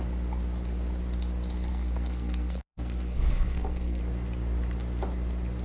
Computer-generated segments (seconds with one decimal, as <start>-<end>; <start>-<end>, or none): 1.7-4.0